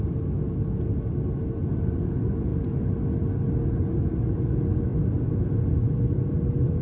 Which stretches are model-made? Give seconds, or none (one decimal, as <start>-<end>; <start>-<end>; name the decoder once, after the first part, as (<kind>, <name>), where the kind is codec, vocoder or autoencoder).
none